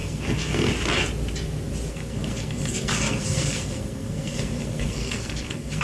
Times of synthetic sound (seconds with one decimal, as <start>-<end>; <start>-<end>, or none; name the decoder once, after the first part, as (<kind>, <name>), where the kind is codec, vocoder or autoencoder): 0.0-0.7 (codec, SNAC); 1.9-5.8